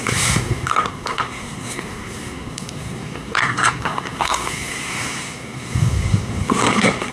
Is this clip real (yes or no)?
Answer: no